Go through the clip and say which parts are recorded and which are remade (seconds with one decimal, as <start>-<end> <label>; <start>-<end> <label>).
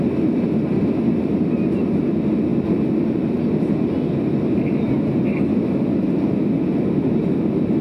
0.0-7.8 recorded